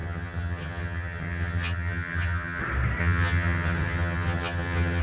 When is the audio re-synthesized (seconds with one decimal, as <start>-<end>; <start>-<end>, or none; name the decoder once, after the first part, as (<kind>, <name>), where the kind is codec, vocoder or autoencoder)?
0.0-2.6 (vocoder, HiFi-GAN); 3.0-5.0